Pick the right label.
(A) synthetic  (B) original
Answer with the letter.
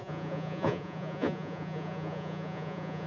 A